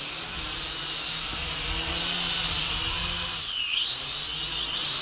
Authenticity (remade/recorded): recorded